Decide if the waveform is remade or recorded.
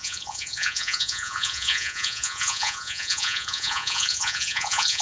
remade